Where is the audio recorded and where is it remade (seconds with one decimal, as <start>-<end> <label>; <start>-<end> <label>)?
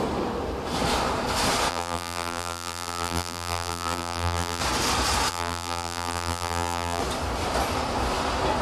0.0-1.7 recorded; 1.7-4.6 remade; 4.6-5.3 recorded; 5.3-7.0 remade; 7.0-8.6 recorded